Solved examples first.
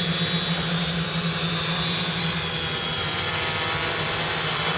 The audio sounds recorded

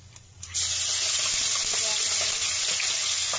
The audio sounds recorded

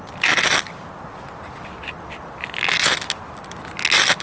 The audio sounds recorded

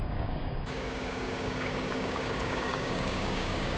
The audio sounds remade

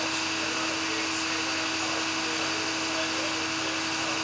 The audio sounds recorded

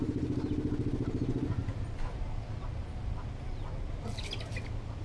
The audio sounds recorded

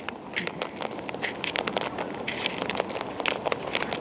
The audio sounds recorded